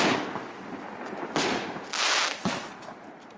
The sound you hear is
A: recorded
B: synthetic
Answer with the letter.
A